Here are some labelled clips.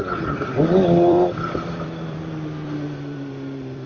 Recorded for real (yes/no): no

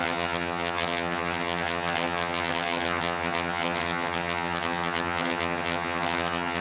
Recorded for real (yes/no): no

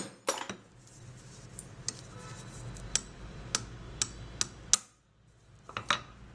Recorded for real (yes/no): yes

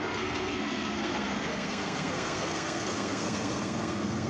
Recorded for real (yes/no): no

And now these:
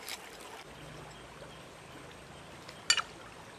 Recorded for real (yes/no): yes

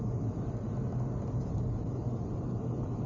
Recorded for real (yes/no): yes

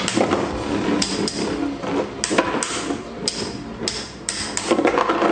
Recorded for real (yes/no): yes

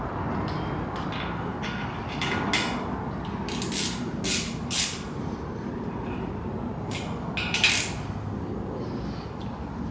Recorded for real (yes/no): yes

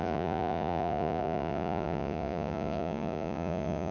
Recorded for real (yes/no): no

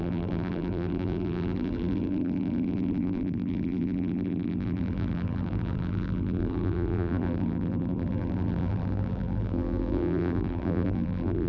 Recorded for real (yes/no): no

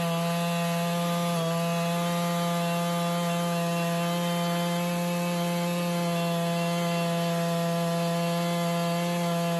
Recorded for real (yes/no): yes